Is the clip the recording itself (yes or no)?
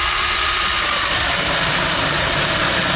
no